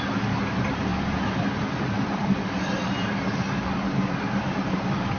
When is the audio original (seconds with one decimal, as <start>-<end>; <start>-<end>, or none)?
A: 0.0-5.2